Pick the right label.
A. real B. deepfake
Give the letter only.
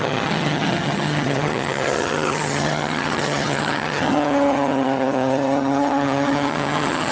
B